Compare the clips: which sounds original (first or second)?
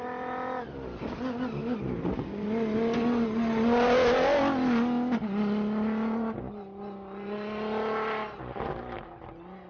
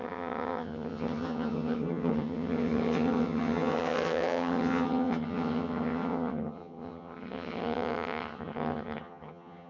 first